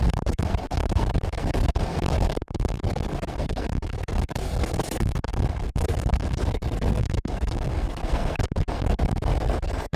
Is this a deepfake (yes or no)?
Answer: yes